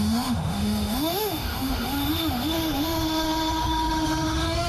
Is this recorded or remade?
remade